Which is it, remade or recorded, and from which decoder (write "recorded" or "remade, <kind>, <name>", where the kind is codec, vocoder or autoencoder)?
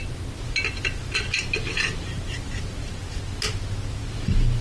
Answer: recorded